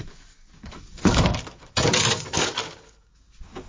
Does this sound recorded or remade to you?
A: remade